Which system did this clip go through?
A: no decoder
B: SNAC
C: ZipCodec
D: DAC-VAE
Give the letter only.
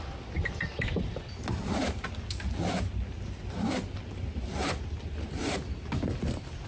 A